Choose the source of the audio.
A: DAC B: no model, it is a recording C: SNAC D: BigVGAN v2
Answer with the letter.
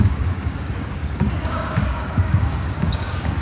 A